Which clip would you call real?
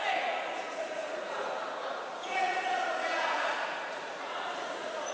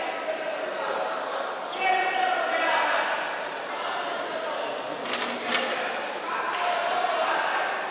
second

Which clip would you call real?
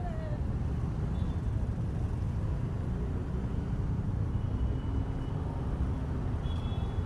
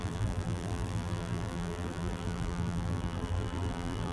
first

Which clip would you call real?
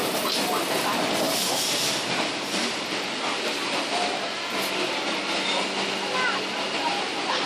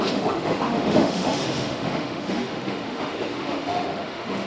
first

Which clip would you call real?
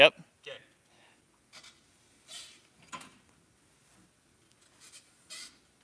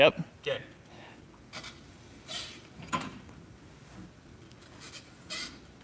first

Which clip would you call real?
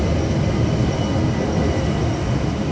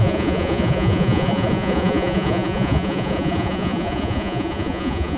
first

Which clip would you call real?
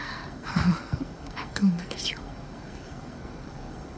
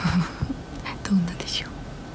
second